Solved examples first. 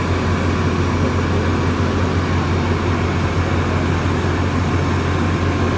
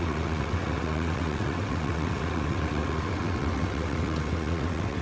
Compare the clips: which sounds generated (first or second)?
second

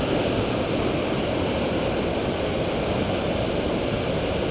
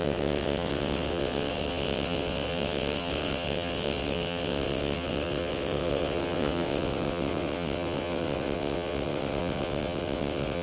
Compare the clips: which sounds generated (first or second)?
second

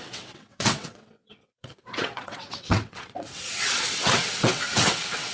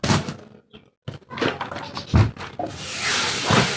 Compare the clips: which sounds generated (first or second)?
first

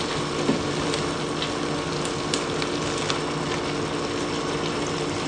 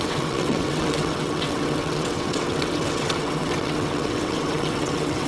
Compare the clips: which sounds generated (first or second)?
second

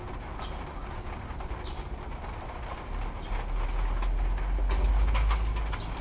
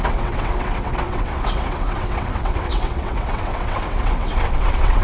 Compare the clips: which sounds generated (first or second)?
second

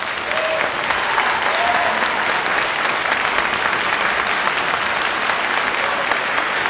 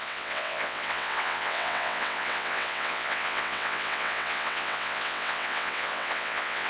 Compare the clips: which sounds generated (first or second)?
second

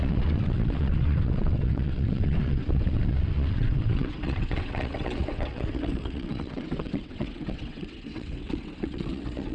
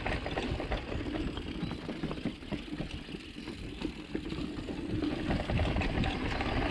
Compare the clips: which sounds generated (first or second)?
first